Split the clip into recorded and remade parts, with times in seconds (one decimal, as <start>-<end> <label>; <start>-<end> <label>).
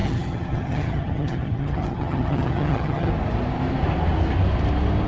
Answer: 0.0-3.1 remade; 3.1-5.1 recorded